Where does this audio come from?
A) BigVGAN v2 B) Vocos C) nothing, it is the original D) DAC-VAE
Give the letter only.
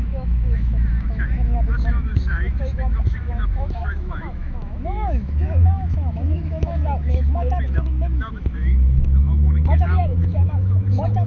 D